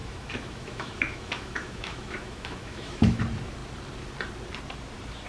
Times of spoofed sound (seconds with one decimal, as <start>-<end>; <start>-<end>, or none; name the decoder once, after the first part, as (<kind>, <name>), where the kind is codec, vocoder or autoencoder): 0.0-3.2 (autoencoder, DAC-VAE)